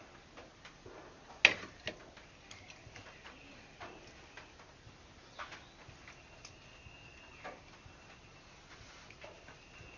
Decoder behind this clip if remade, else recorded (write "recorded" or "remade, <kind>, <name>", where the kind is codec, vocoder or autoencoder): recorded